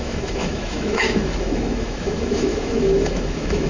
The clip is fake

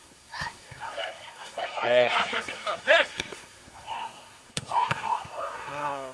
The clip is fake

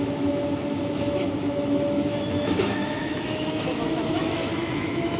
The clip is fake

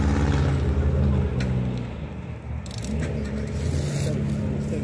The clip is real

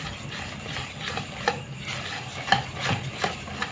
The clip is real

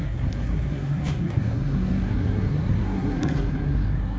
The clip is fake